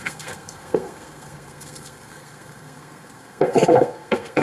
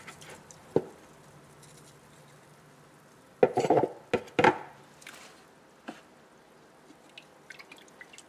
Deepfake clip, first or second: first